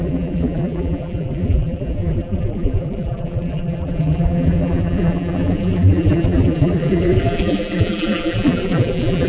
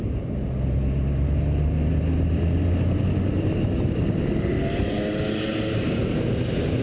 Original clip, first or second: second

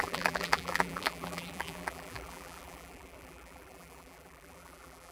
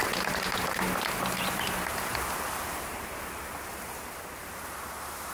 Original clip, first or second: second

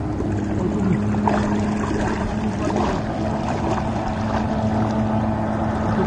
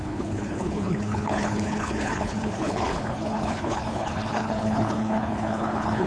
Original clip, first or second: first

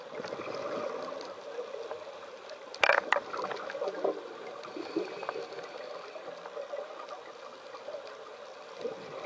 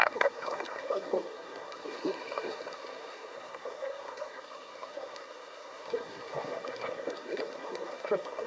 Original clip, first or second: first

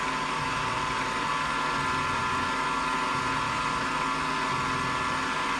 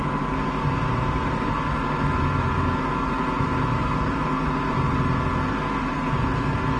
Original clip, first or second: first